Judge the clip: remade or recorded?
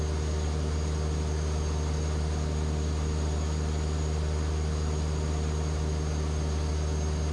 recorded